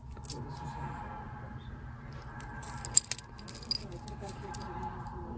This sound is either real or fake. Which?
real